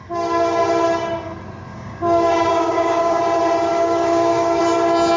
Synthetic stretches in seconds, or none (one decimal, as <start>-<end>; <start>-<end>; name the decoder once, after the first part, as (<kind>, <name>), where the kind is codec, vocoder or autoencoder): 1.7-3.2 (codec, DAC); 3.7-4.6